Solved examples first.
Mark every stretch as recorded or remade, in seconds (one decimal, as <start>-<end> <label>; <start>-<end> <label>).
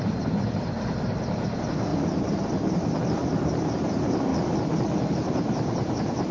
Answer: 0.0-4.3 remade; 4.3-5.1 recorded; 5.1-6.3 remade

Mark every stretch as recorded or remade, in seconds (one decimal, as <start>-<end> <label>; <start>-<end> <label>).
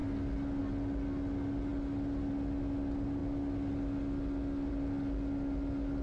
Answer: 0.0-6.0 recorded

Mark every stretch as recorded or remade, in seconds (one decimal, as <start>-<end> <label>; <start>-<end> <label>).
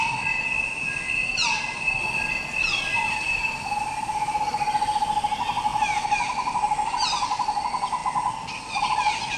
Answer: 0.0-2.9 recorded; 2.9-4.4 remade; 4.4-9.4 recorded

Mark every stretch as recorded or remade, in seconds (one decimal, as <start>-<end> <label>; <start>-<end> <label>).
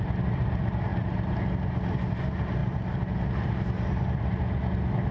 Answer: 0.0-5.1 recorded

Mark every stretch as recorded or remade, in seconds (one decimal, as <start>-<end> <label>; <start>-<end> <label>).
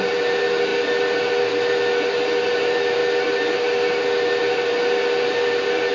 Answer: 0.0-5.9 recorded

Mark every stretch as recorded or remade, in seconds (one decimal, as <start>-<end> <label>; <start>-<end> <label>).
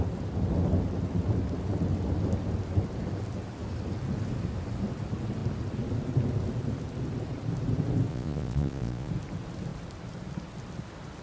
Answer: 0.0-8.1 recorded; 8.1-9.1 remade; 9.1-11.2 recorded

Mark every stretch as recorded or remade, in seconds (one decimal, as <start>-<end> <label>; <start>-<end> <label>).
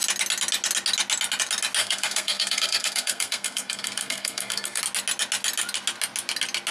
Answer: 0.0-1.8 recorded; 1.8-4.8 remade; 4.8-6.7 recorded